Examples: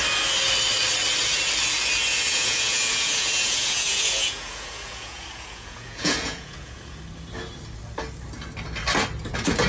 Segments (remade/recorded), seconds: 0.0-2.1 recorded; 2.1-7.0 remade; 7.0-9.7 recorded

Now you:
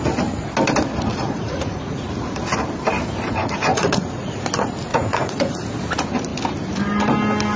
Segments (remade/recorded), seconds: 0.0-1.1 recorded; 1.1-2.1 remade; 2.1-3.4 recorded; 3.4-4.4 remade; 4.4-4.9 recorded; 4.9-5.6 remade; 5.6-7.6 recorded

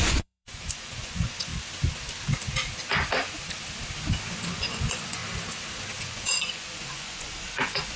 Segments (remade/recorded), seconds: 0.0-1.5 remade; 1.5-4.2 recorded; 4.2-5.2 remade; 5.2-6.0 recorded; 6.0-8.0 remade

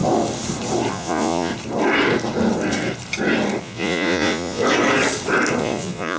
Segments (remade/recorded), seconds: 0.0-0.9 recorded; 0.9-1.5 remade; 1.5-3.6 recorded; 3.6-4.6 remade; 4.6-5.6 recorded; 5.6-6.2 remade

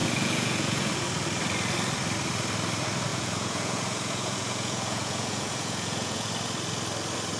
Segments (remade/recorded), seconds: 0.0-0.9 remade; 0.9-3.1 recorded; 3.1-6.3 remade; 6.3-7.4 recorded

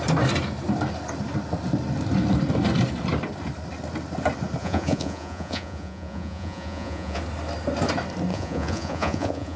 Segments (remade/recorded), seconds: 0.0-4.6 recorded; 4.6-7.2 remade; 7.2-8.3 recorded; 8.3-9.6 remade